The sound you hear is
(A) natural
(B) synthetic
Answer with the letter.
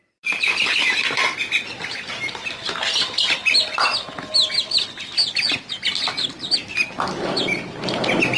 A